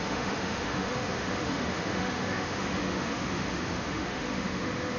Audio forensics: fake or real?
fake